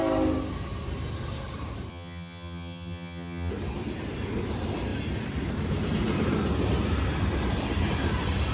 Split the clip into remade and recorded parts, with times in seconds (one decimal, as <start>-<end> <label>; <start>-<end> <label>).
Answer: 0.0-1.9 recorded; 1.9-3.5 remade; 3.5-8.5 recorded